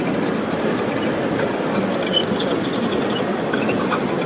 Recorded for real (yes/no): yes